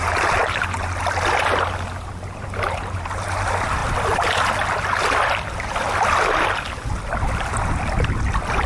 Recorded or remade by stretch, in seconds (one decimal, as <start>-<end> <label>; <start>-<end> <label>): 0.0-2.3 recorded; 2.3-3.4 remade; 3.4-8.7 recorded